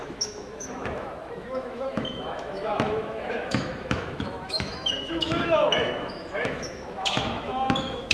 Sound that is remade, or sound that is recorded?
remade